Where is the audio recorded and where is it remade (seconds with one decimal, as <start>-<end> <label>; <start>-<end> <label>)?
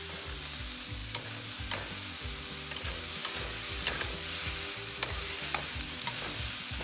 0.0-6.8 recorded